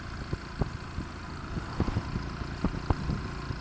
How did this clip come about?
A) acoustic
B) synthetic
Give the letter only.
A